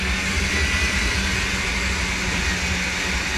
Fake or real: real